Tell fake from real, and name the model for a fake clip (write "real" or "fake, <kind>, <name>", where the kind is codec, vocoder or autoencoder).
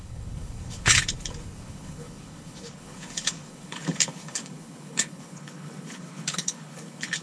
fake, codec, HILCodec